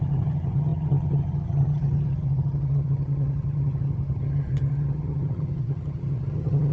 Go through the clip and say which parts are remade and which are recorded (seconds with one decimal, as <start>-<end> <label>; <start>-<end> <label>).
0.0-6.7 remade